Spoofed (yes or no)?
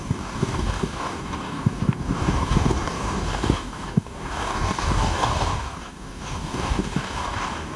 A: yes